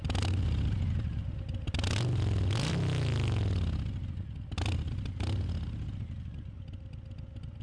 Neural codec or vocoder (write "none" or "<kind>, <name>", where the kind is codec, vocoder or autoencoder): none